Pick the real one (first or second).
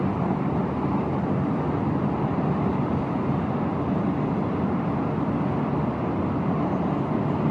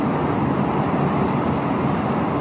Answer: second